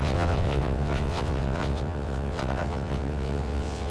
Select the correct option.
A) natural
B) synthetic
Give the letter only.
B